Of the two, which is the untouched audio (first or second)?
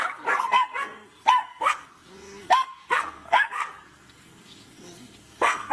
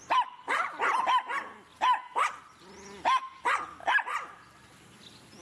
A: second